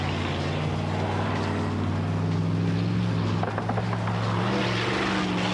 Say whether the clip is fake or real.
real